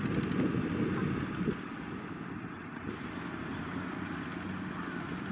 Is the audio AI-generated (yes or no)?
no